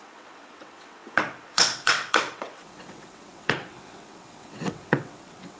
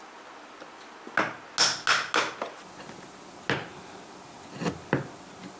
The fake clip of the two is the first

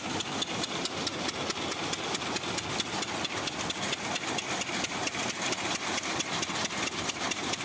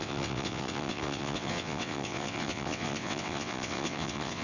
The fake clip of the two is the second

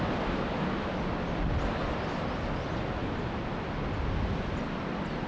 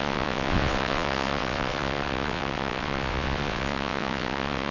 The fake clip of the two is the second